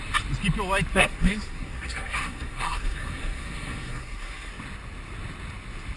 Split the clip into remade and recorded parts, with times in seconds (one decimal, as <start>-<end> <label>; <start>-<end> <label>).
0.0-0.9 recorded; 0.9-4.5 remade; 4.5-6.0 recorded